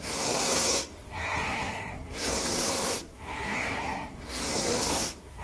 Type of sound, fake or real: fake